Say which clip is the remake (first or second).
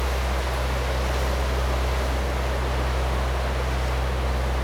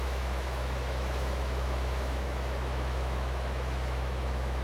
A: second